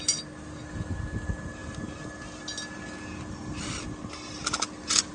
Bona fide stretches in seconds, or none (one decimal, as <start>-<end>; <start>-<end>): 0.0-5.1